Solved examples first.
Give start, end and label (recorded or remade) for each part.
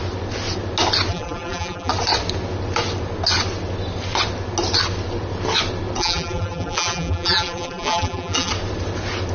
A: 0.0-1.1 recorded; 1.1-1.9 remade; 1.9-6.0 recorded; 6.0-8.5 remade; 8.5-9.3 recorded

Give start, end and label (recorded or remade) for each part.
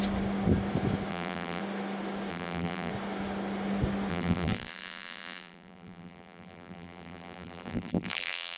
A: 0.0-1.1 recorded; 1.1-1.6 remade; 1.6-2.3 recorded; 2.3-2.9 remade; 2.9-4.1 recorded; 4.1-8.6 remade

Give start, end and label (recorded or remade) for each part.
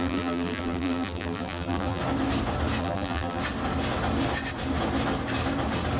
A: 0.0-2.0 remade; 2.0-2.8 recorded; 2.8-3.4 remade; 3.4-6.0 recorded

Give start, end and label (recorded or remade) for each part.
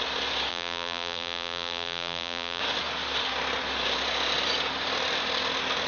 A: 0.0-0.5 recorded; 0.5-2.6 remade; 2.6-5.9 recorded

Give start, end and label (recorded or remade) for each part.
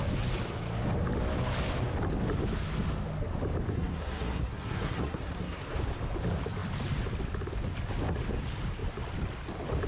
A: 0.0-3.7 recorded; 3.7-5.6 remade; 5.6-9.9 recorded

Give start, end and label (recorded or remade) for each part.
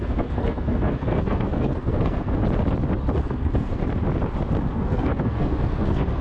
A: 0.0-2.4 remade; 2.4-3.2 recorded; 3.2-3.8 remade; 3.8-4.6 recorded; 4.6-6.2 remade